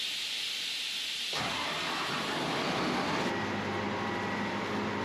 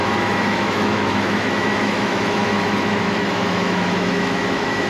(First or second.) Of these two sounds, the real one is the first